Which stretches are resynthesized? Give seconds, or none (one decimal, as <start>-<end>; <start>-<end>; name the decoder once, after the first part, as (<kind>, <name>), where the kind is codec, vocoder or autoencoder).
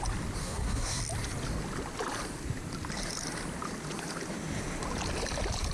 0.4-1.0 (codec, SNAC)